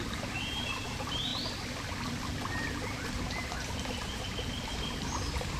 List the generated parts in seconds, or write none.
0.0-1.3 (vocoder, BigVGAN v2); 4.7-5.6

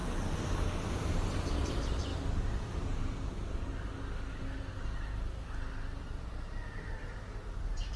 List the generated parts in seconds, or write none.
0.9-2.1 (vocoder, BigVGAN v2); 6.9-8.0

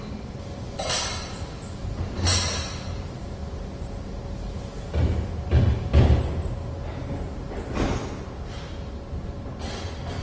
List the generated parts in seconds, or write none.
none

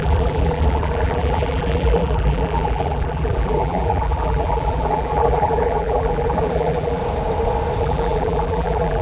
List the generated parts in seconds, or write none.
0.0-7.0 (vocoder, BigVGAN v2); 7.8-9.0

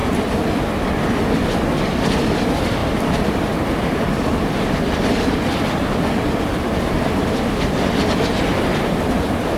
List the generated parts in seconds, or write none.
none